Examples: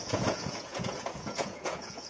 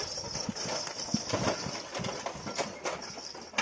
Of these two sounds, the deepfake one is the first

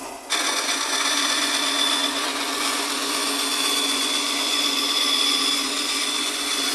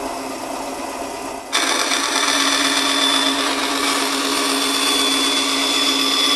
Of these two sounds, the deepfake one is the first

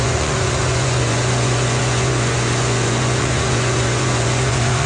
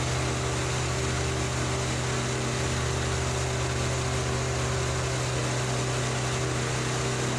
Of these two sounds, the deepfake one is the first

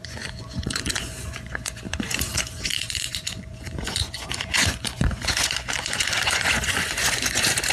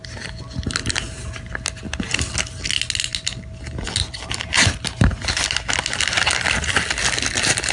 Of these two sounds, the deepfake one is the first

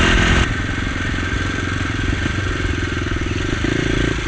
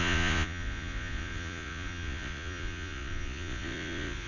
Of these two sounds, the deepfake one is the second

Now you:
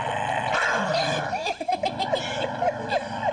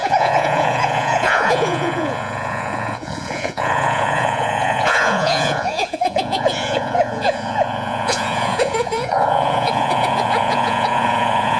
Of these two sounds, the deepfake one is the second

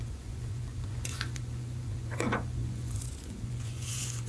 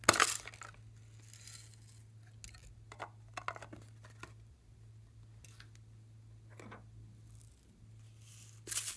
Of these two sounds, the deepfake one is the first